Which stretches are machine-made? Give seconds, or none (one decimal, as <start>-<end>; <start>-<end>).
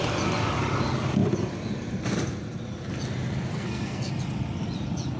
3.5-4.1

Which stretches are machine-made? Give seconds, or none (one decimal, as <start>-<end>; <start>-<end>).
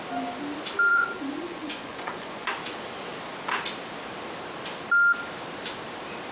0.9-2.5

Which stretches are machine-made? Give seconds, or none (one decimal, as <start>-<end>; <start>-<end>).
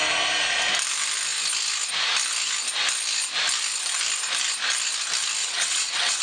5.4-6.2